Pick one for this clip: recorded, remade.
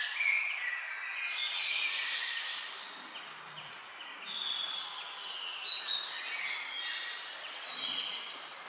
recorded